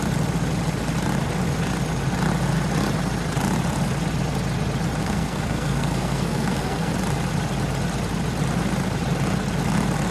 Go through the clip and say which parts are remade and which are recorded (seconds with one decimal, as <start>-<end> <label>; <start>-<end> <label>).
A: 0.0-5.0 recorded; 5.0-6.9 remade; 6.9-10.1 recorded